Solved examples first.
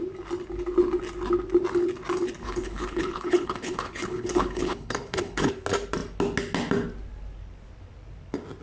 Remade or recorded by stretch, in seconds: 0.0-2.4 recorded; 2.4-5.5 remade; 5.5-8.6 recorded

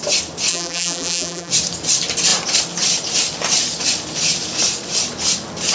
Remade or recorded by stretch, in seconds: 0.0-0.5 recorded; 0.5-1.5 remade; 1.5-5.7 recorded

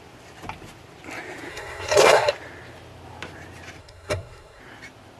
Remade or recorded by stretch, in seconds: 0.0-1.5 recorded; 1.5-2.3 remade; 2.3-3.8 recorded; 3.8-4.6 remade; 4.6-5.2 recorded

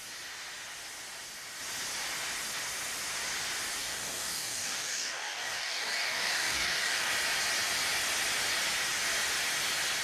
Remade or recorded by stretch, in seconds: 0.0-3.8 recorded; 3.8-7.1 remade; 7.1-10.0 recorded